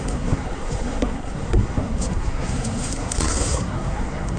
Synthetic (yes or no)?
yes